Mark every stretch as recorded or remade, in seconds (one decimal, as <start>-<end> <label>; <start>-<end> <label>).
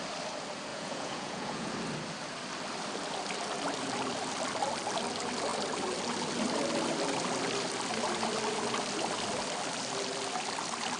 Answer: 0.0-0.7 recorded; 0.7-1.7 remade; 1.7-11.0 recorded